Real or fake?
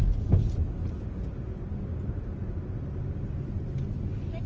real